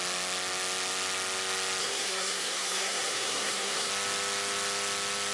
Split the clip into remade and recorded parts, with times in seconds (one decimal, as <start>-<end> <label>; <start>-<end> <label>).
0.0-1.8 recorded; 1.8-3.9 remade; 3.9-5.3 recorded